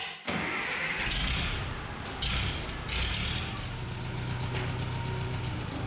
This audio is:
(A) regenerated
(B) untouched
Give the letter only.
B